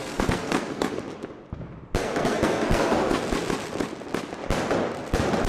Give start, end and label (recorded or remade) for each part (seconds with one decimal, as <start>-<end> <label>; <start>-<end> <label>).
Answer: 0.0-0.9 remade; 0.9-2.0 recorded; 2.0-3.2 remade; 3.2-5.5 recorded